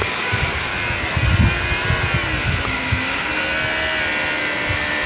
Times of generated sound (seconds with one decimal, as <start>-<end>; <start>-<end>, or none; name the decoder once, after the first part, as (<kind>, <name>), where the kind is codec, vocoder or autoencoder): 0.0-0.7 (codec, DAC); 2.7-3.3